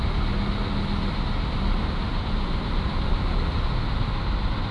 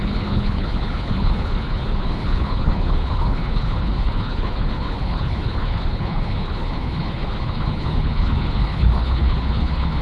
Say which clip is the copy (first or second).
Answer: second